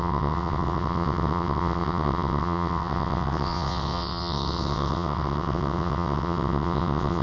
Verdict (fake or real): fake